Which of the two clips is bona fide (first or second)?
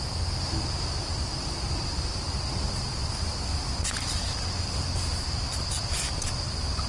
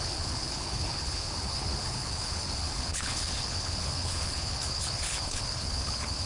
first